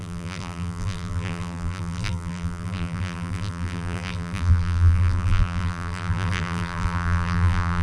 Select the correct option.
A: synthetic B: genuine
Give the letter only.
A